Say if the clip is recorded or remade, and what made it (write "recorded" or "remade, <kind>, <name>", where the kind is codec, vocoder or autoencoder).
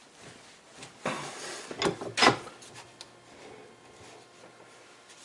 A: recorded